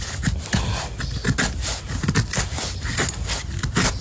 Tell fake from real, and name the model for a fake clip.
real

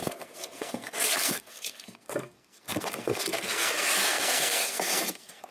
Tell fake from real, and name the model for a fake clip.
fake, codec, SNAC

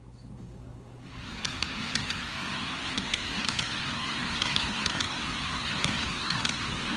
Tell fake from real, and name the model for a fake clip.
fake, codec, SNAC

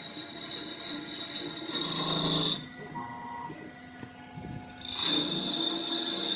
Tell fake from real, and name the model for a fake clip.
real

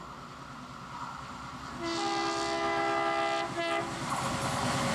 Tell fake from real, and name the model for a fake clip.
real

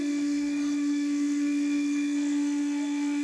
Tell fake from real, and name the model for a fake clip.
fake, codec, SNAC